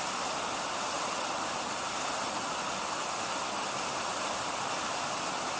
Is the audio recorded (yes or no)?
yes